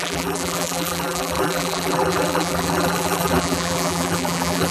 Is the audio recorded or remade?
remade